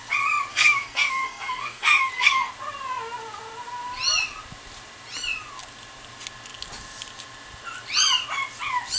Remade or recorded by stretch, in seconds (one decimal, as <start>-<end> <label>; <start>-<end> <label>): 0.0-0.5 recorded; 0.5-2.5 remade; 2.5-9.0 recorded